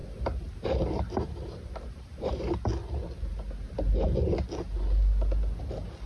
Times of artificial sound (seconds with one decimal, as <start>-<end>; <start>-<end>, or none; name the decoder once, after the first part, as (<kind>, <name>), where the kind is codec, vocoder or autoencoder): 0.0-2.5 (vocoder, BigVGAN v2)

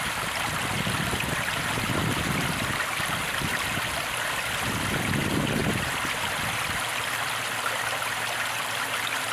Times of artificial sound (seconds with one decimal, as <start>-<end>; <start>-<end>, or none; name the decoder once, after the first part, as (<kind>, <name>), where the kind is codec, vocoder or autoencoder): none

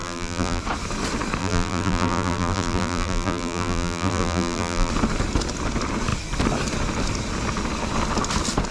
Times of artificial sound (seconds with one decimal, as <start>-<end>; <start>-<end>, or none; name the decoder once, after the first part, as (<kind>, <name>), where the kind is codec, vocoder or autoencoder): 0.0-0.6 (vocoder, BigVGAN v2); 1.4-4.9

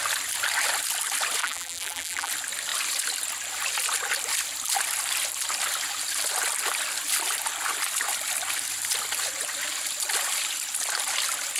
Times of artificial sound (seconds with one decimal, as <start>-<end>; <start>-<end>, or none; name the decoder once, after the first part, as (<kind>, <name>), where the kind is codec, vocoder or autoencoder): 1.4-2.3 (vocoder, BigVGAN v2)

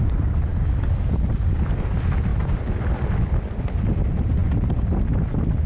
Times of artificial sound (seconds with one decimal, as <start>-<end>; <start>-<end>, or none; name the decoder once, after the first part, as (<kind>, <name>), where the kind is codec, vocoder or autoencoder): 0.0-2.3 (vocoder, BigVGAN v2); 3.6-4.4

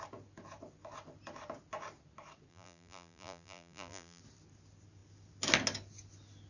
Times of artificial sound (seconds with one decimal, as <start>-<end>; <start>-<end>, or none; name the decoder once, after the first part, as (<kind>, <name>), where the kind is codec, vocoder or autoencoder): 2.5-4.2 (vocoder, BigVGAN v2)